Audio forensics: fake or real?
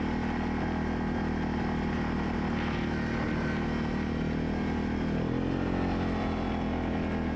real